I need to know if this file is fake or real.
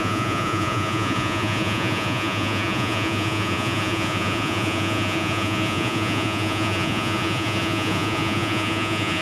fake